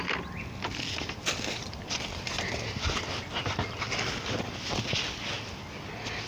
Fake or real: real